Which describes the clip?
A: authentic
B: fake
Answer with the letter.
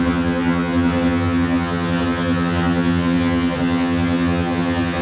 B